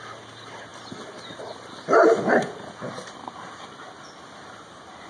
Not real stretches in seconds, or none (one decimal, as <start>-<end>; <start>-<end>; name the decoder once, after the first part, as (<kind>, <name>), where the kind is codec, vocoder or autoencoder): none